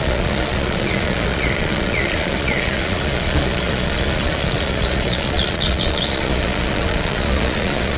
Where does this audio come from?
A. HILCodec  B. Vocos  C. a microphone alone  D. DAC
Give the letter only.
B